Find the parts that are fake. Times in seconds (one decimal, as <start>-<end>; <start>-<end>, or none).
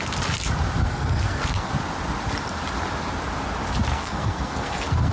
0.8-1.7; 3.9-5.1